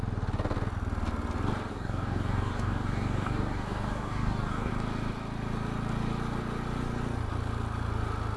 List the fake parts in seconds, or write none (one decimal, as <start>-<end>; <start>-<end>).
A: 1.7-4.7